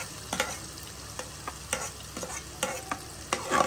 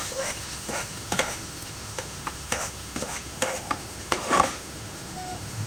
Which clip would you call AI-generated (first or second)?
second